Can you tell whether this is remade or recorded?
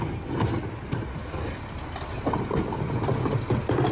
recorded